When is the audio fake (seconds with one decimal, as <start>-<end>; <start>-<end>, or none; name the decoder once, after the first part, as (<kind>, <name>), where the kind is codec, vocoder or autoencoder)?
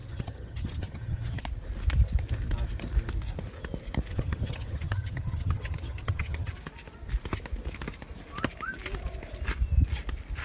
0.0-1.4 (vocoder, HiFi-GAN); 4.1-6.5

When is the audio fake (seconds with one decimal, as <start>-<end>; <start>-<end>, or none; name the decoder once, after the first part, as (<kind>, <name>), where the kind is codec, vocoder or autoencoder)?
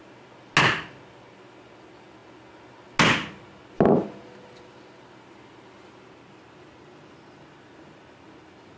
none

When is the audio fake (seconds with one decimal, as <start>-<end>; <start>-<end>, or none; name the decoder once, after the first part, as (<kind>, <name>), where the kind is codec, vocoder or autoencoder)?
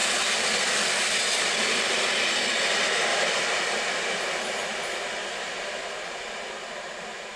5.2-5.9 (vocoder, BigVGAN v2)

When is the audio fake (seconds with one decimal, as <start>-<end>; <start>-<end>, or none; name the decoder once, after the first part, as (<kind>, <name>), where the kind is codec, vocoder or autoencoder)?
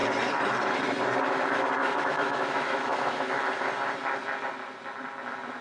1.8-3.5 (autoencoder, DAC-VAE)